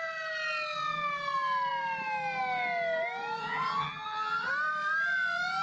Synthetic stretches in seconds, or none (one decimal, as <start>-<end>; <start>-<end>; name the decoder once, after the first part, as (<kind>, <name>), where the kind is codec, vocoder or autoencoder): 3.4-4.5 (vocoder, HiFi-GAN)